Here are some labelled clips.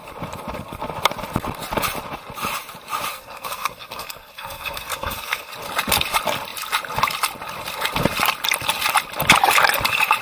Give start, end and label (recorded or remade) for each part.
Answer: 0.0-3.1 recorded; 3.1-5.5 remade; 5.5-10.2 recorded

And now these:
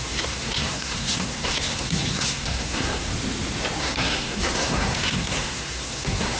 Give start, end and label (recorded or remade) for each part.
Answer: 0.0-3.1 remade; 3.1-3.8 recorded; 3.8-6.4 remade

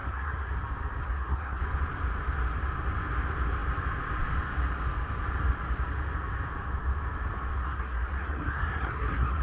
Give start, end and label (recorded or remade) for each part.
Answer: 0.0-0.5 remade; 0.5-1.0 recorded; 1.0-1.6 remade; 1.6-7.6 recorded; 7.6-9.4 remade

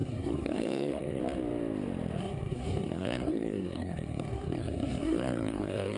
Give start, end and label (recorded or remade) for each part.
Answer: 0.0-1.2 remade; 1.2-2.2 recorded; 2.2-6.0 remade

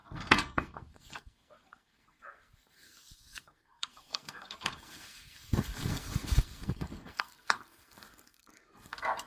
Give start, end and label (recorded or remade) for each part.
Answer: 0.0-9.3 remade